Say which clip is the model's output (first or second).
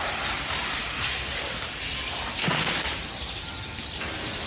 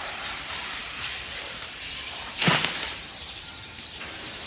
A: second